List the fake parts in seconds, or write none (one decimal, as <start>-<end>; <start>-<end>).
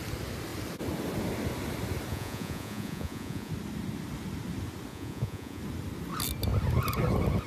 2.1-3.5; 4.9-5.6